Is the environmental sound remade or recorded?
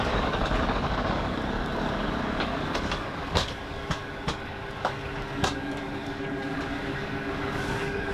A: remade